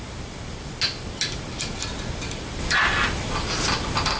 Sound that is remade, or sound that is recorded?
recorded